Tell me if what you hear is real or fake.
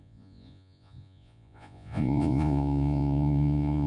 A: fake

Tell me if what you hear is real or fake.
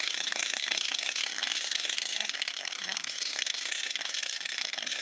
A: fake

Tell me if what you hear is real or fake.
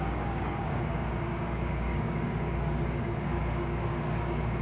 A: fake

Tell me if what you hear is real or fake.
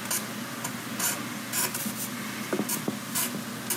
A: real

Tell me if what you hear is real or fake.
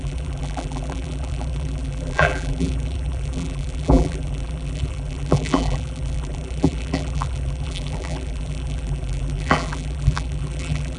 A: fake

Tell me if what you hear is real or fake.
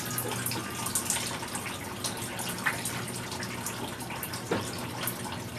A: real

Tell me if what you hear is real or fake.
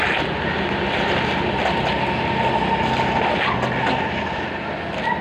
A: real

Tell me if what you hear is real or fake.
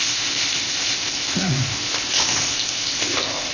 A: fake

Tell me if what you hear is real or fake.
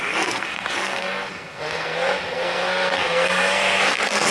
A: fake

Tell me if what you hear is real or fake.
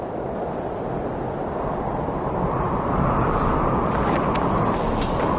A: real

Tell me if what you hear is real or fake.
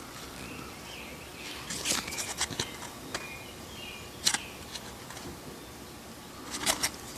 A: real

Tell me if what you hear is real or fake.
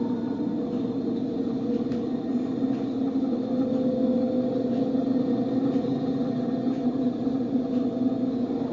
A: real